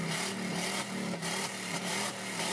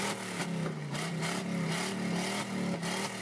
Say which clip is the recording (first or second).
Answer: second